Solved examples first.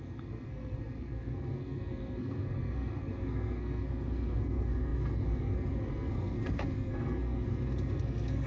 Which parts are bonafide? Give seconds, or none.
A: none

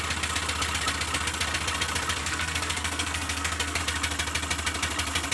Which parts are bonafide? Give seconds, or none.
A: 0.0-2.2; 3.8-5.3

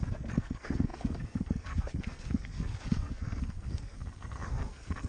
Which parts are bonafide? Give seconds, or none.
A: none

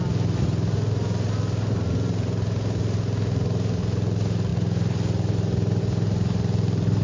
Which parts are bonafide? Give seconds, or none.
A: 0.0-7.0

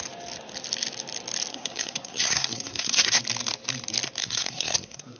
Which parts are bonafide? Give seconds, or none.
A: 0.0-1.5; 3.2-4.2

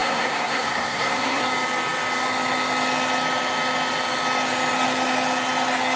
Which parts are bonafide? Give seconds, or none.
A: 1.4-6.0

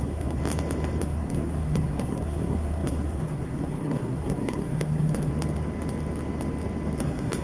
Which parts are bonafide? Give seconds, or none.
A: 0.4-1.0; 5.3-7.0